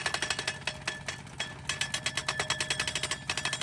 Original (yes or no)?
yes